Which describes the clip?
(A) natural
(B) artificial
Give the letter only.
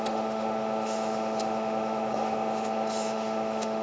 B